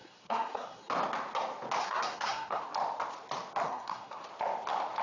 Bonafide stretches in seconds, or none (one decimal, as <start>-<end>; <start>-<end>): 0.9-1.8; 2.6-3.6; 4.2-5.0